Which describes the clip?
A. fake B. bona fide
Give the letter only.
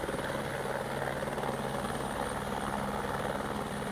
B